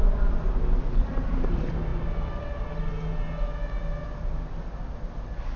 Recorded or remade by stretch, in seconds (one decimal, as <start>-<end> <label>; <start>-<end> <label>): 0.0-5.6 recorded

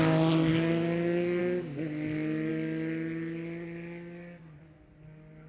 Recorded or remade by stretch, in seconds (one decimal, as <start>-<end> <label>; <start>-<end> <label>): 0.0-5.5 recorded

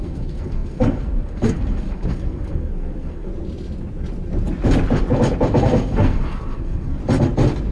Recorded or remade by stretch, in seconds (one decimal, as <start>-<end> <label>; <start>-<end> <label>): 0.0-3.3 remade; 3.3-5.6 recorded; 5.6-7.0 remade; 7.0-7.7 recorded

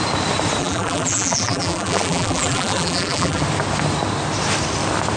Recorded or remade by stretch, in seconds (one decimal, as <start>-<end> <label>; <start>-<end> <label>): 0.0-0.6 recorded; 0.6-3.4 remade; 3.4-5.2 recorded